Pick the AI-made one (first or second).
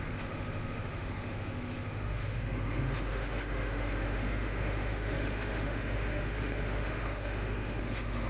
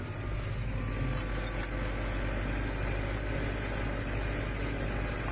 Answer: first